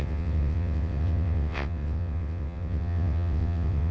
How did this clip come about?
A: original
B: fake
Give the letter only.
B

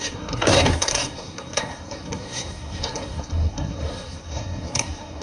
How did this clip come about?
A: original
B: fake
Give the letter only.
B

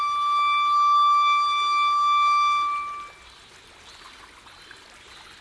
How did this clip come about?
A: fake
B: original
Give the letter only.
B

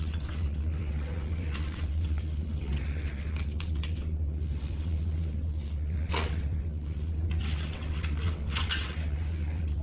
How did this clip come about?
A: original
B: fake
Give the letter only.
B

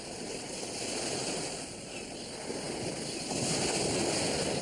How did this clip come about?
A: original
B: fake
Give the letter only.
A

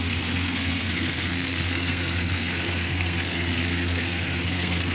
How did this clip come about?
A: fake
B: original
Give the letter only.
A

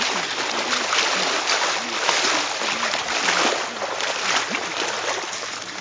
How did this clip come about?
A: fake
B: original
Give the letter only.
B